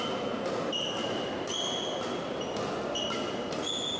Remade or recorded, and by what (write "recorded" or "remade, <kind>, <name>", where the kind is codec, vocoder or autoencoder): recorded